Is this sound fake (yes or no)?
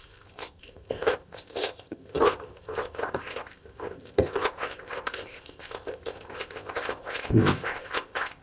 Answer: yes